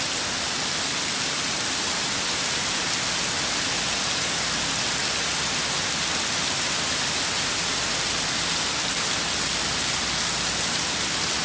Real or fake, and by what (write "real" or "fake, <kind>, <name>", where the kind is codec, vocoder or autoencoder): real